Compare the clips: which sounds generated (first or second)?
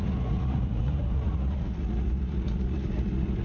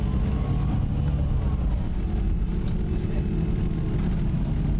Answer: first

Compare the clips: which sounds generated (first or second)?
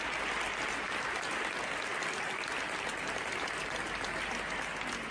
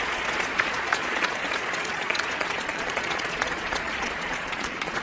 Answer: second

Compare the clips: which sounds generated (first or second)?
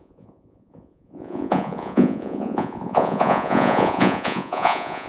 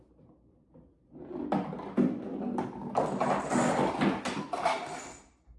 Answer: first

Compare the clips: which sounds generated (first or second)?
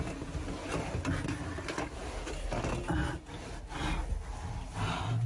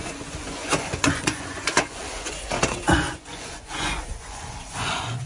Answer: second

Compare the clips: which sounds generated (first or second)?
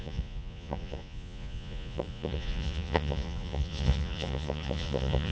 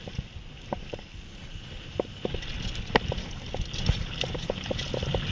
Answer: first